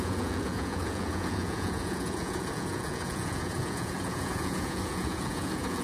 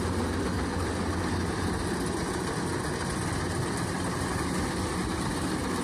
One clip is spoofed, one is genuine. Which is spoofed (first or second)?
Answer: first